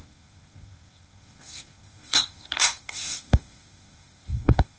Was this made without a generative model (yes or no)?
no